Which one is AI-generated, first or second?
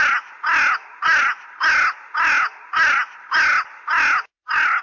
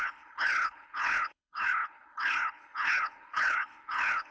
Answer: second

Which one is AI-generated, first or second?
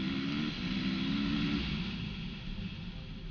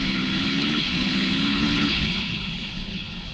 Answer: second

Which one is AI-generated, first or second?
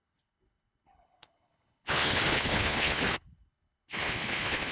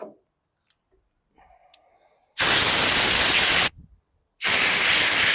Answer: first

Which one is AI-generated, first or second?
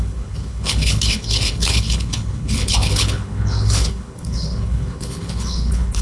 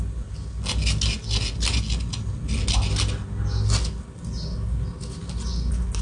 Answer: first